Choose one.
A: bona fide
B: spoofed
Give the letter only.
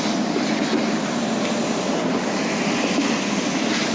A